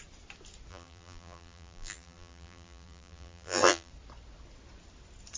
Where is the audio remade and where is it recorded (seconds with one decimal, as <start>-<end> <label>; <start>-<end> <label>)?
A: 0.0-0.7 recorded; 0.7-3.9 remade; 3.9-5.4 recorded

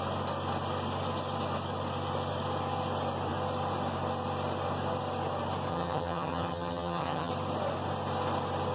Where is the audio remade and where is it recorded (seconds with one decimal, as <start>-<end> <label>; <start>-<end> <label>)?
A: 0.0-5.7 recorded; 5.7-7.3 remade; 7.3-8.7 recorded

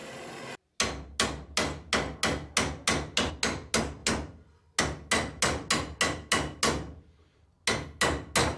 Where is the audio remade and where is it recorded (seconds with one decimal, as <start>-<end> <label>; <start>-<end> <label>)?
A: 0.0-8.6 recorded

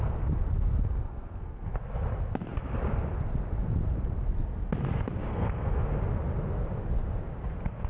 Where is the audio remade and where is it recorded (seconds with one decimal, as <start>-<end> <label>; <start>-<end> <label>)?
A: 0.0-0.8 recorded; 0.8-1.8 remade; 1.8-5.3 recorded; 5.3-5.8 remade; 5.8-7.9 recorded

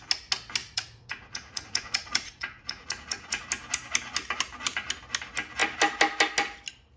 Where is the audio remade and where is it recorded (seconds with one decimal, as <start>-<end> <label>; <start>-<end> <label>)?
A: 0.0-0.6 recorded; 0.6-3.4 remade; 3.4-7.0 recorded

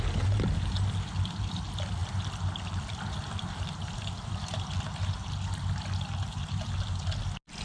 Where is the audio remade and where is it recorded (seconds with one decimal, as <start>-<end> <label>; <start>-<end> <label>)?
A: 0.0-2.0 recorded; 2.0-6.6 remade; 6.6-7.6 recorded